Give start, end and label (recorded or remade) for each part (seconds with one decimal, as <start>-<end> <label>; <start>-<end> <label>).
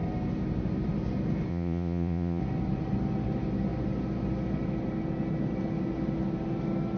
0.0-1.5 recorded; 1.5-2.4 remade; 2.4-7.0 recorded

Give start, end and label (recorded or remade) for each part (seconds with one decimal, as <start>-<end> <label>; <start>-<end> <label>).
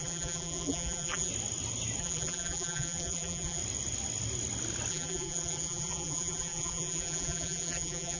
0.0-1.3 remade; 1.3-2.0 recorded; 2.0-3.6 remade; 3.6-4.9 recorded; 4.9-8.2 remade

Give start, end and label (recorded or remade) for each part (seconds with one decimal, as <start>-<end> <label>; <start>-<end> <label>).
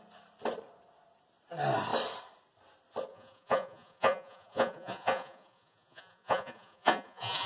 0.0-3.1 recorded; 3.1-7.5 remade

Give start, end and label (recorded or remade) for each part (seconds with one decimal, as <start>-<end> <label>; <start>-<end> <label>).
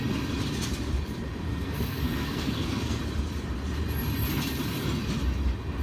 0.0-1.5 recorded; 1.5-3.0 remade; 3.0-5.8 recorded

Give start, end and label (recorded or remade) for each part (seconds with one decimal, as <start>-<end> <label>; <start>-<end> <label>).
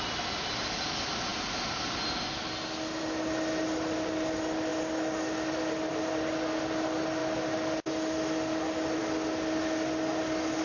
0.0-10.6 recorded